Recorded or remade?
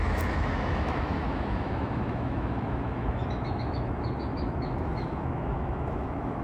remade